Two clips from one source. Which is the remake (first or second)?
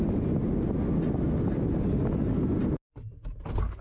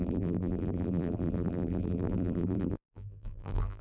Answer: second